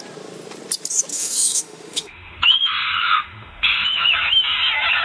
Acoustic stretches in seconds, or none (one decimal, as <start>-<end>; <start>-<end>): 0.0-1.1; 4.1-5.0